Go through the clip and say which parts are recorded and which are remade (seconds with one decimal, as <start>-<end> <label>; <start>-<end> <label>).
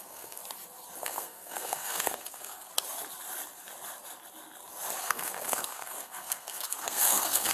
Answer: 0.0-0.4 remade; 0.4-1.0 recorded; 1.0-2.7 remade; 2.7-5.0 recorded; 5.0-7.5 remade